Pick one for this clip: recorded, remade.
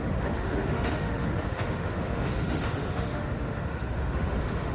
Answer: remade